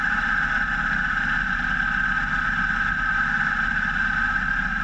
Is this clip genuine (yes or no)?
yes